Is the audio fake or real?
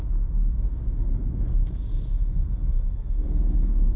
fake